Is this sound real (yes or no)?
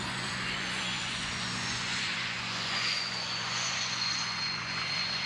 no